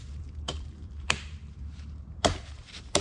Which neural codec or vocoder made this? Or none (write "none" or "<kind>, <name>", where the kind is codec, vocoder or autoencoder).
vocoder, BigVGAN v2